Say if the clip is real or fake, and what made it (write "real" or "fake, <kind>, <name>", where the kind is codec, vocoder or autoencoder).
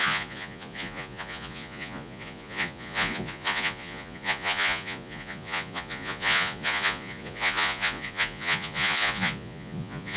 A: fake, vocoder, Vocos